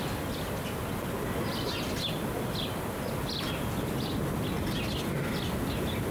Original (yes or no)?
yes